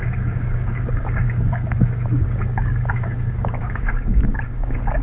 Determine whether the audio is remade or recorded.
remade